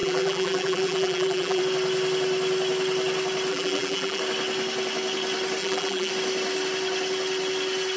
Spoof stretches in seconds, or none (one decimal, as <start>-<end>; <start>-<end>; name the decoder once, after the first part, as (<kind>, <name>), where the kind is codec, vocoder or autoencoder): 0.0-1.6 (vocoder, BigVGAN v2); 3.5-4.2; 5.6-6.1